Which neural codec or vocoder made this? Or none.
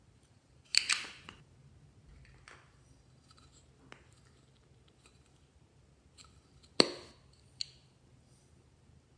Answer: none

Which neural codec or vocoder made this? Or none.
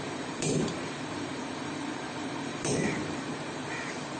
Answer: vocoder, BigVGAN v2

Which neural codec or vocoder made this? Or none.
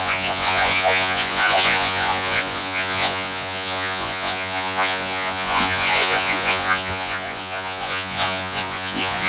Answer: vocoder, Vocos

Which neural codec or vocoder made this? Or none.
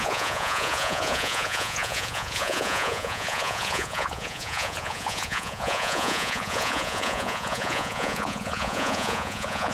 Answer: vocoder, Vocos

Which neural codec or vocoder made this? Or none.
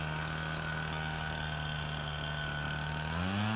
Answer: none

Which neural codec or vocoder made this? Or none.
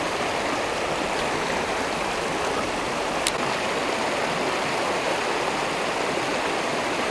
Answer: none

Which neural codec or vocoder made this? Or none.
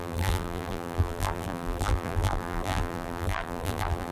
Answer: vocoder, BigVGAN v2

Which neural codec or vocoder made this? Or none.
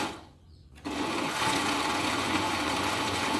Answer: vocoder, Vocos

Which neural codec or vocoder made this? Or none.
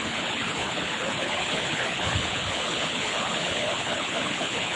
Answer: codec, HILCodec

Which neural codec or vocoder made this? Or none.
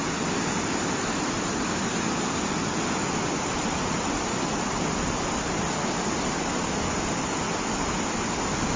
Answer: none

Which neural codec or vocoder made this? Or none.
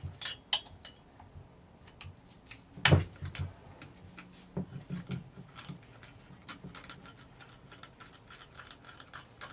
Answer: none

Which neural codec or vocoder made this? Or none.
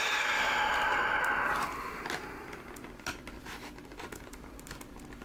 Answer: none